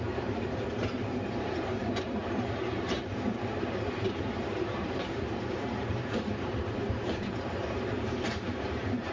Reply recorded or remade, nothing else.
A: remade